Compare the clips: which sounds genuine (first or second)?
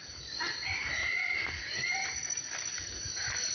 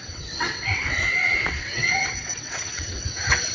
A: first